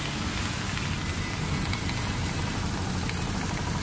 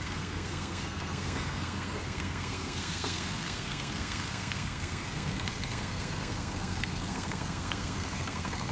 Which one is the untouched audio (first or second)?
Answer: first